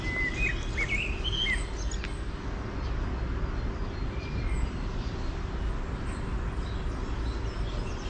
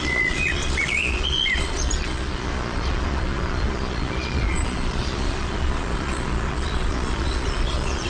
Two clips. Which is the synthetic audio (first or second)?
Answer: second